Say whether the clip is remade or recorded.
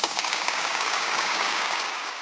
remade